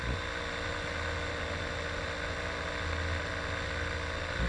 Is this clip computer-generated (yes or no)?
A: no